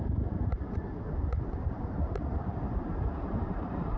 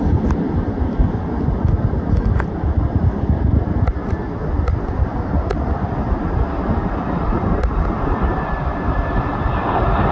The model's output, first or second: first